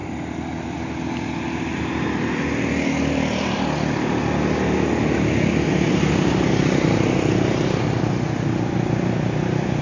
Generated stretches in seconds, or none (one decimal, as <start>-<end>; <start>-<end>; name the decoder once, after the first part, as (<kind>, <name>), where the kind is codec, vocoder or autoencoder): none